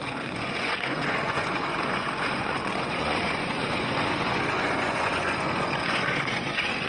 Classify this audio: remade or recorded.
remade